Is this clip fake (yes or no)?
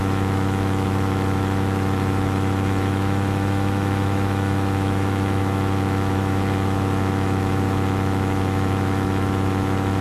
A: yes